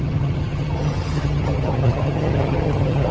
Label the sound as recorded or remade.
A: remade